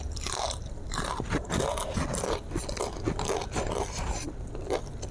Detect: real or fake real